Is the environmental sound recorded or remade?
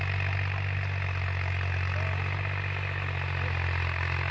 recorded